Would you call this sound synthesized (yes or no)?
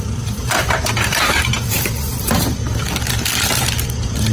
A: no